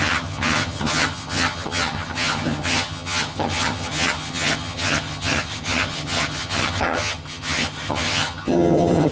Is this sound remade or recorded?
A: remade